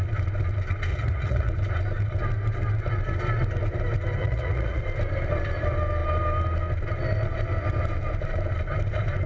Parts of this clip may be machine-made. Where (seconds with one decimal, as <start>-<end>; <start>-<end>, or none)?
0.9-1.5; 4.2-4.8